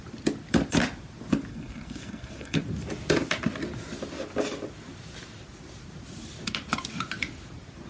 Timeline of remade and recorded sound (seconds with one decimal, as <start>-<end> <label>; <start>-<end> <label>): 0.0-1.5 recorded; 1.5-2.6 remade; 2.6-7.9 recorded

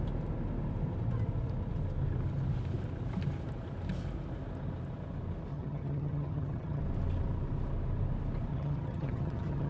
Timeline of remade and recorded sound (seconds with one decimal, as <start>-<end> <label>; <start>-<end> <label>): 0.0-5.5 recorded; 5.5-6.8 remade; 6.8-8.5 recorded; 8.5-9.7 remade